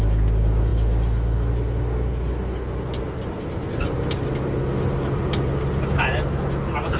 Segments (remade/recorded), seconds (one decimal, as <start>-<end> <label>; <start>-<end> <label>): 0.0-7.0 recorded